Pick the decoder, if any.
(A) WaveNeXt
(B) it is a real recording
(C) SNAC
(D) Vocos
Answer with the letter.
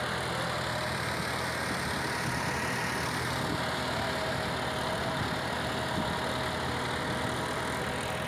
B